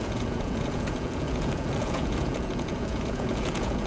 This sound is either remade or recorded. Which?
remade